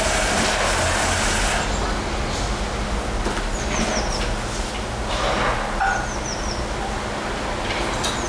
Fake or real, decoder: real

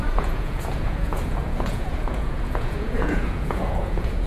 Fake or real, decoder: fake, vocoder, Vocos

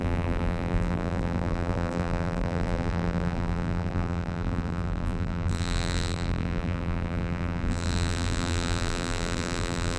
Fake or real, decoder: fake, vocoder, BigVGAN v2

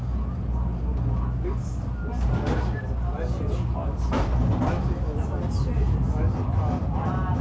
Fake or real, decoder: real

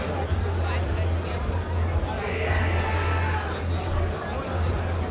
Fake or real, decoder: real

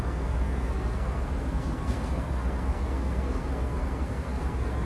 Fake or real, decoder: fake, codec, SNAC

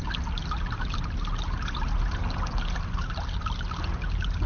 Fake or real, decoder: real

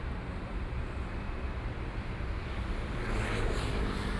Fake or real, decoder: real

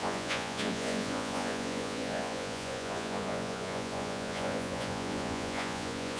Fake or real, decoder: fake, vocoder, Vocos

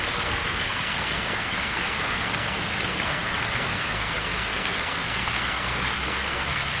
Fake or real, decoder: fake, codec, SNAC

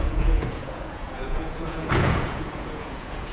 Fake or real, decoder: fake, vocoder, Vocos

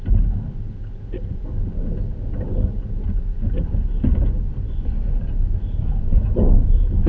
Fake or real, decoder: real